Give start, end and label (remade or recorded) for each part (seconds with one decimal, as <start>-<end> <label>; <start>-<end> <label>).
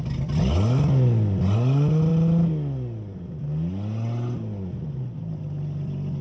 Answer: 0.0-6.2 recorded